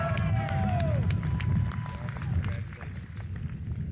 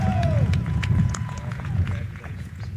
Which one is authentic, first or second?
first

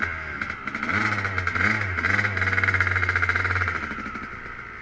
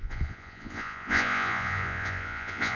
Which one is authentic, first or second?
first